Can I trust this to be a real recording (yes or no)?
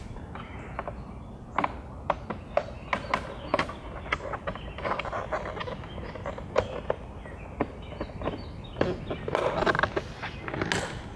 yes